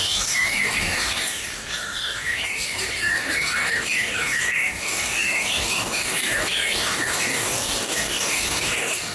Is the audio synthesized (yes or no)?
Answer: yes